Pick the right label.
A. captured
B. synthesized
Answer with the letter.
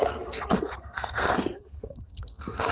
B